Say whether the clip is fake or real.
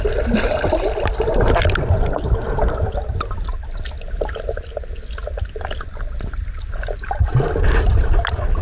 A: real